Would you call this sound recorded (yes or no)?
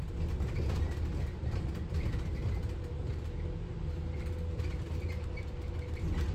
yes